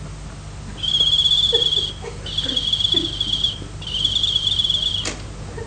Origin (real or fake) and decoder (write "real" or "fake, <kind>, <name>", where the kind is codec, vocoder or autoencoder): real